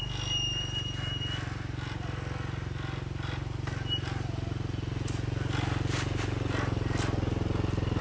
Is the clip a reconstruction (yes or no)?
no